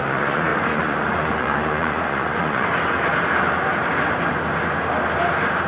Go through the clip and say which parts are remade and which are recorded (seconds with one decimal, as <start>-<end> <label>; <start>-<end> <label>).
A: 0.0-2.7 remade; 2.7-5.7 recorded